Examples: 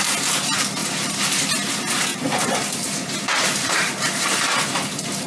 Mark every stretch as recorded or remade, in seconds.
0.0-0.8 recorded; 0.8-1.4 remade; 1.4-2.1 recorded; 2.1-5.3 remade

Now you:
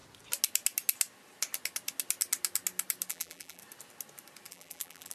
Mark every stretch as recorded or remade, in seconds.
0.0-3.1 recorded; 3.1-3.6 remade; 3.6-4.5 recorded; 4.5-5.1 remade

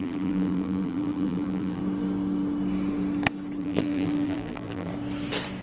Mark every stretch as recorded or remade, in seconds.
0.0-1.8 remade; 1.8-3.6 recorded; 3.6-4.9 remade; 4.9-5.6 recorded

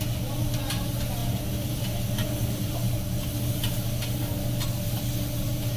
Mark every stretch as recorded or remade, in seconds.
0.0-1.2 recorded; 1.2-1.8 remade; 1.8-5.8 recorded

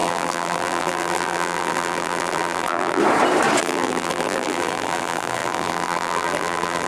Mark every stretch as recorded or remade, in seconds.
0.0-3.0 remade; 3.0-3.6 recorded; 3.6-6.9 remade

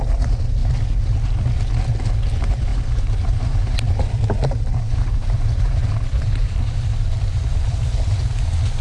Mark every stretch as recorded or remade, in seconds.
0.0-2.7 recorded; 2.7-7.8 remade; 7.8-8.8 recorded

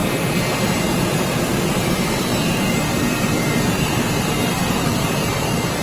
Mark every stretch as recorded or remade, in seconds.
0.0-2.3 remade; 2.3-3.0 recorded; 3.0-5.8 remade